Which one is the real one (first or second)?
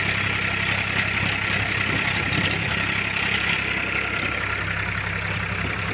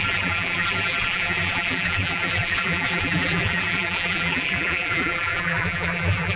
first